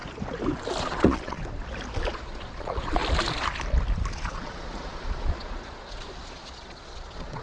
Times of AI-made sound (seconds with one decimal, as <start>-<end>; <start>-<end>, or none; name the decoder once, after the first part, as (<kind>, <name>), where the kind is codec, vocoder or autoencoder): 0.8-1.4 (vocoder, Vocos); 2.1-3.0; 4.1-7.4